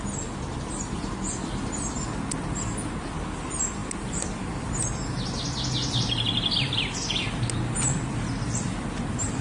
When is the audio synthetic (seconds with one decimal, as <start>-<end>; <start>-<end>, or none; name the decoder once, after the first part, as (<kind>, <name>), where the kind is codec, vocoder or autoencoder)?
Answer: none